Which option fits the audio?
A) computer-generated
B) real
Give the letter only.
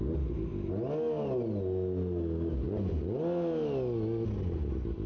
B